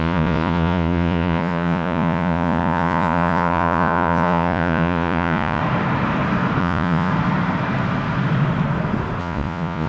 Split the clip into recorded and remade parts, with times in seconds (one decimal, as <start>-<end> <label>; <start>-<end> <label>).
0.0-5.6 remade; 5.6-6.6 recorded; 6.6-7.1 remade; 7.1-9.2 recorded; 9.2-9.9 remade